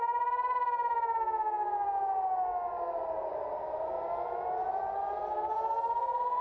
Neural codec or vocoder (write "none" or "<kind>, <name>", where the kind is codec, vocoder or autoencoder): none